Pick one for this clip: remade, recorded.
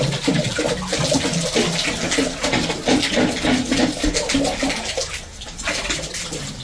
recorded